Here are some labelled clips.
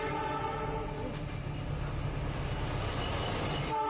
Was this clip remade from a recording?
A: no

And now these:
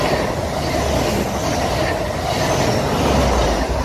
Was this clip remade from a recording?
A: no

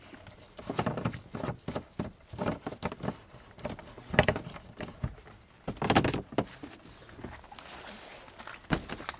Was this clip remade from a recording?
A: no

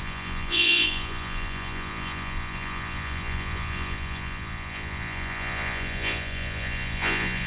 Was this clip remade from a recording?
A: yes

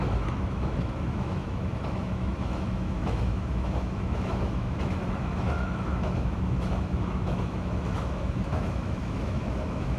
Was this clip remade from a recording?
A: yes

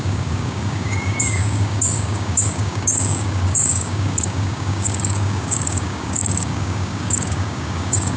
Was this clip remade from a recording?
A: yes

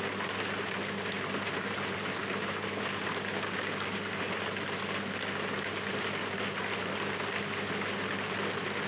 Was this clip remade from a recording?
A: no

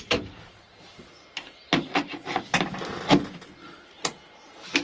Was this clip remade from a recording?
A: no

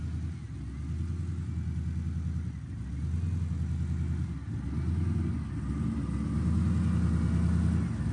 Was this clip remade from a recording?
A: no